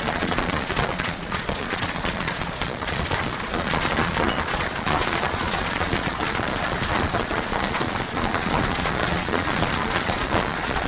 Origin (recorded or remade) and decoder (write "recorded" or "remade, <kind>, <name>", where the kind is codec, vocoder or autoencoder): remade, vocoder, Vocos